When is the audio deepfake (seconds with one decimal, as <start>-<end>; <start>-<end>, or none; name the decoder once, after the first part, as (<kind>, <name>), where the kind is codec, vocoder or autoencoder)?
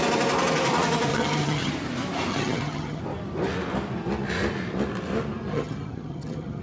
1.1-1.7 (vocoder, HiFi-GAN); 2.3-3.0; 5.5-6.6